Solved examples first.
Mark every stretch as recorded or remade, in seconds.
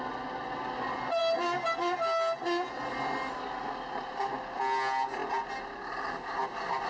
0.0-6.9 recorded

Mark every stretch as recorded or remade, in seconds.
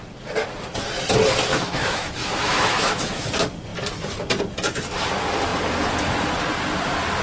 0.0-1.5 recorded; 1.5-3.3 remade; 3.3-7.2 recorded